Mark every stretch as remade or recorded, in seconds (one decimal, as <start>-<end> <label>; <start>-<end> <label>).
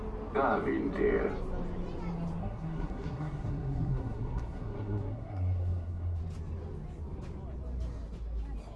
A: 0.0-2.4 recorded; 2.4-6.2 remade; 6.2-8.8 recorded